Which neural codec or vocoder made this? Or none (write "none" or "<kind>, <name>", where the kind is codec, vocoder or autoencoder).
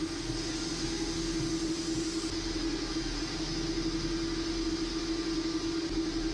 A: none